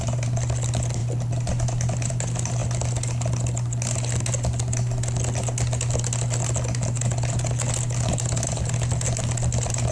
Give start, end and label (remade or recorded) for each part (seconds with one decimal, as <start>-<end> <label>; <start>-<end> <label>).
0.0-9.9 recorded